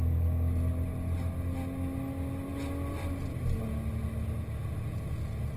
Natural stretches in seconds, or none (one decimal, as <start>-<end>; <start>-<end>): 0.0-5.6